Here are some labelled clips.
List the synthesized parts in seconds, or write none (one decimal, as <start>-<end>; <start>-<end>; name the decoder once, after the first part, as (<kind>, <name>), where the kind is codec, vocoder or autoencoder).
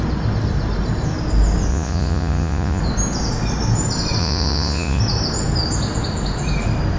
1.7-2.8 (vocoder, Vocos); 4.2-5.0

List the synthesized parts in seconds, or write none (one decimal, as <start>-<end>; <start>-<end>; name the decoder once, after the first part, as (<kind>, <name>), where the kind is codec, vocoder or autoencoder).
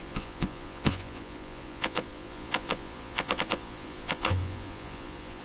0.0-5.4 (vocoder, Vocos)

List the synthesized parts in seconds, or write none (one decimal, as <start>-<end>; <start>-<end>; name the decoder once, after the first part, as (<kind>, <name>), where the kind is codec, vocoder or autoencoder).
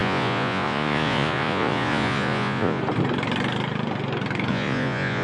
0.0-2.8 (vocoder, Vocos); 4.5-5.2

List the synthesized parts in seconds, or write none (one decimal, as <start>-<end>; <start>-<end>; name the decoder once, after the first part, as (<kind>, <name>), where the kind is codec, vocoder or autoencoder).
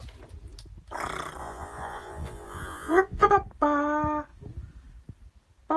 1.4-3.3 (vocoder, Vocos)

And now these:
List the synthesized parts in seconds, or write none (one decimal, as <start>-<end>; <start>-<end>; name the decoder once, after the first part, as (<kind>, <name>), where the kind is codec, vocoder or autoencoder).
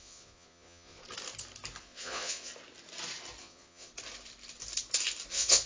0.0-1.0 (vocoder, Vocos); 1.8-2.5; 3.4-3.9; 5.3-5.7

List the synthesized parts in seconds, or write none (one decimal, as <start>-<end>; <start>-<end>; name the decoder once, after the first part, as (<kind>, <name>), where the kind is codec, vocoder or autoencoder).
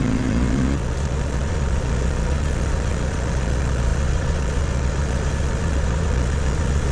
0.0-6.9 (vocoder, Vocos)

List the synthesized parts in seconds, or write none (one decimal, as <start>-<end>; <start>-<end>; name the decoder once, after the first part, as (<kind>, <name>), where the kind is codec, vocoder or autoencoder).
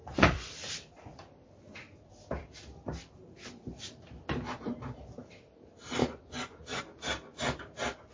0.0-0.5 (vocoder, Vocos); 6.0-6.8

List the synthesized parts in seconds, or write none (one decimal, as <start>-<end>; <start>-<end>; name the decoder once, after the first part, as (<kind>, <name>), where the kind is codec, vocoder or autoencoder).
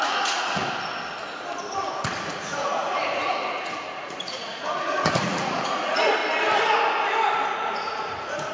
0.0-0.6 (vocoder, Vocos); 2.3-6.2; 7.5-8.5